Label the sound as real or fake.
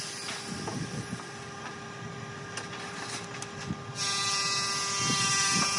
real